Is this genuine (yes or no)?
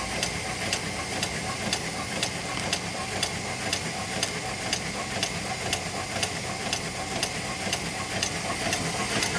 yes